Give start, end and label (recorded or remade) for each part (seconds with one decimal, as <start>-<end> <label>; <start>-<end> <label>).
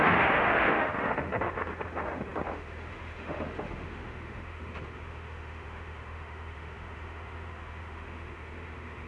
0.0-9.1 remade